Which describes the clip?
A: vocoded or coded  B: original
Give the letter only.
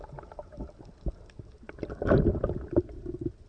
B